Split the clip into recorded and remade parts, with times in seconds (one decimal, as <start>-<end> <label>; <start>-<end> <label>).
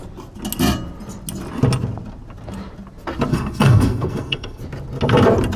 0.0-3.3 recorded; 3.3-4.6 remade; 4.6-5.6 recorded